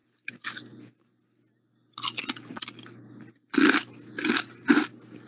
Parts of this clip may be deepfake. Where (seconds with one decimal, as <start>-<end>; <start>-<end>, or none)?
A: none